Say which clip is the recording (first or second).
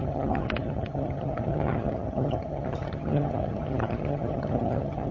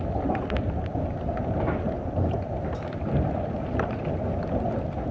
second